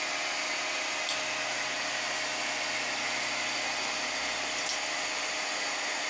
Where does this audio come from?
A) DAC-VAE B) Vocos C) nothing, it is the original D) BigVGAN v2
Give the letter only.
C